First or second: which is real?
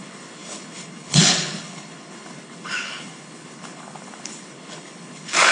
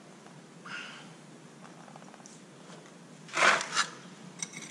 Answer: second